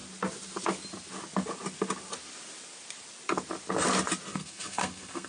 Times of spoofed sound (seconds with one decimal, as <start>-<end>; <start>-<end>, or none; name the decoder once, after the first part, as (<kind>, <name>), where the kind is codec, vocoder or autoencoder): 4.3-5.3 (codec, SNAC)